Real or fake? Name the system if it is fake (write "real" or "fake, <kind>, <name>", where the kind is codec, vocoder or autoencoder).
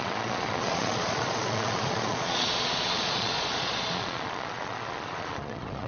fake, vocoder, Vocos